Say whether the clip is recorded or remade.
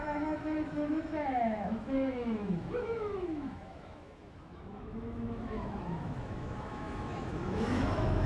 remade